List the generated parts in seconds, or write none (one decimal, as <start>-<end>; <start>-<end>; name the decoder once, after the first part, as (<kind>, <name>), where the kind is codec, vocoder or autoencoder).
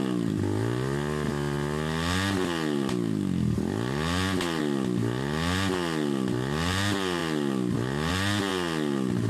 none